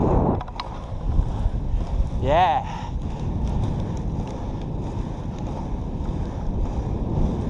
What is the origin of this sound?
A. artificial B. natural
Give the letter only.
B